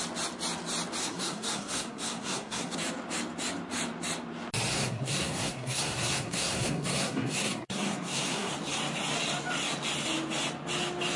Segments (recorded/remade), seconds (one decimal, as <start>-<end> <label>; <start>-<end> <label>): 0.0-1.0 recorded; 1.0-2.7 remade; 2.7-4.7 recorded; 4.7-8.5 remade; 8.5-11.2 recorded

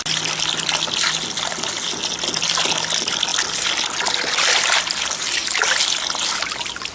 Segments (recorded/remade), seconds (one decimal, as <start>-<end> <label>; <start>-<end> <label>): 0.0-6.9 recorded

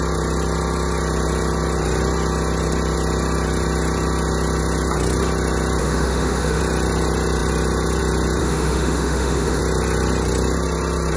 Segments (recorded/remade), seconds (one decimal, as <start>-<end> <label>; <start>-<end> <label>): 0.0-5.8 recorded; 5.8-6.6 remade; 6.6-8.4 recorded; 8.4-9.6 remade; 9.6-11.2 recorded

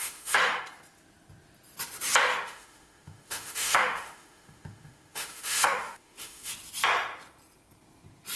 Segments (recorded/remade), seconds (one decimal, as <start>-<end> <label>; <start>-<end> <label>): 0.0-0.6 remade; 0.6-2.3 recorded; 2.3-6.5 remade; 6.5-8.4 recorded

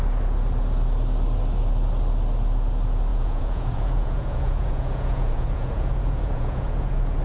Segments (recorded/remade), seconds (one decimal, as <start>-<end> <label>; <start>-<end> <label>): 0.0-3.1 recorded; 3.1-7.2 remade